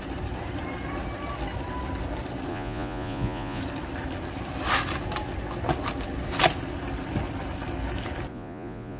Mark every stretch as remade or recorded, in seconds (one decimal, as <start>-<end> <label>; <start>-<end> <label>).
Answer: 0.0-2.5 recorded; 2.5-3.6 remade; 3.6-8.3 recorded; 8.3-9.0 remade